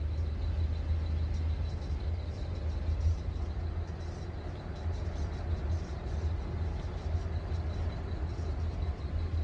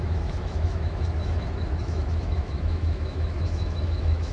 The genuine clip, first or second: first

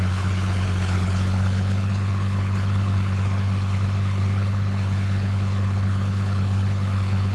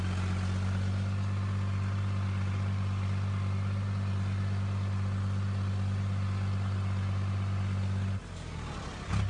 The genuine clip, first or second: second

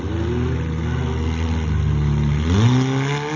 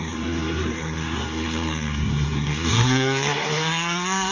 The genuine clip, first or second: first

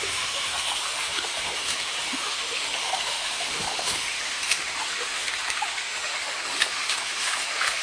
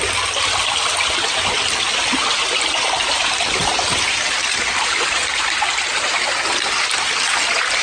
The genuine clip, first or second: second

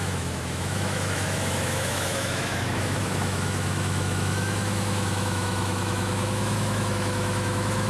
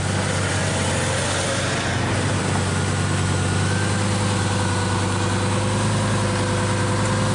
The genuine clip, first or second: second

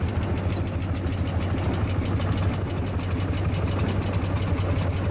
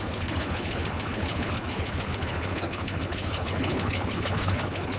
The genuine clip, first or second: first